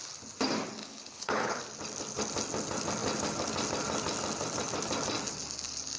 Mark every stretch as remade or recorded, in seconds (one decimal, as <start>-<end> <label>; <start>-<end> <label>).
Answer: 0.0-0.8 recorded; 0.8-1.6 remade; 1.6-6.0 recorded